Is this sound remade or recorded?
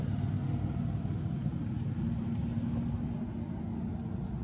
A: recorded